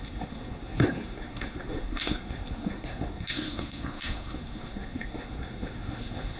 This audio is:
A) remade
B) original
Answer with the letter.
A